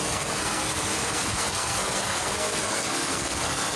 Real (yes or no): no